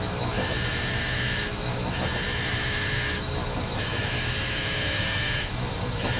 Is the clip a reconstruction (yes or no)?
yes